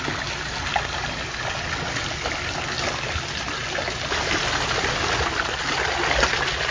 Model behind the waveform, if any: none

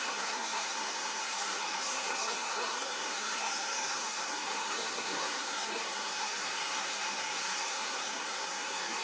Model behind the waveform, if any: codec, SNAC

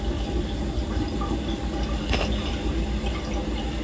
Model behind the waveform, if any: none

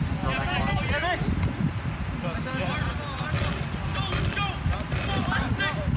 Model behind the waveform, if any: none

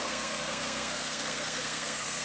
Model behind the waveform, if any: codec, SNAC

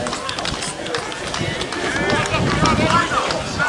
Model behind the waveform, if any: none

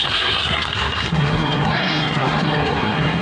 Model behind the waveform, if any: codec, SNAC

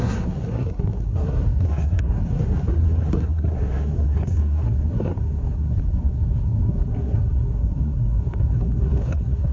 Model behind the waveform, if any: codec, SNAC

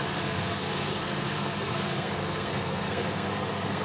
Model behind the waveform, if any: codec, SNAC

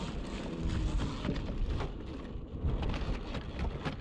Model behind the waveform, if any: none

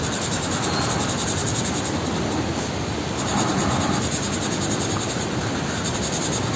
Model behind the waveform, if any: none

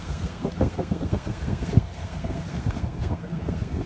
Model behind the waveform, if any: codec, SNAC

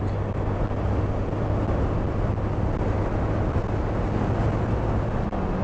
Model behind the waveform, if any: none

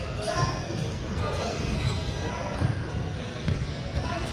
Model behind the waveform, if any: codec, SNAC